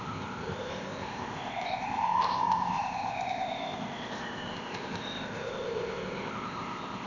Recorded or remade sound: remade